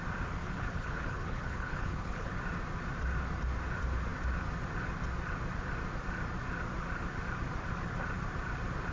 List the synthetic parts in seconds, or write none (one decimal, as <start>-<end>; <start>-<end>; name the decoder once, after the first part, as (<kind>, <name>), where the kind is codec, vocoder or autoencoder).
0.4-2.4 (codec, HILCodec)